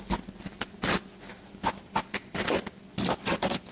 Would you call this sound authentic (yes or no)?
no